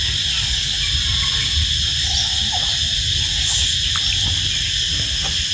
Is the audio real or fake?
real